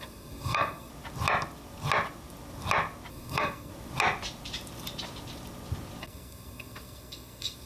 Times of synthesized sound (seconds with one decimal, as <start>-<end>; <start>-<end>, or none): 0.0-0.9; 3.1-3.7; 6.0-7.7